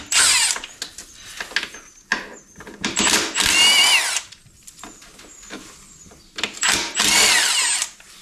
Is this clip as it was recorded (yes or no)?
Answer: yes